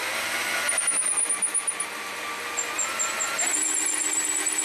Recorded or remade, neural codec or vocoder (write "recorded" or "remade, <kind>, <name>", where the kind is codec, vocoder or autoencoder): recorded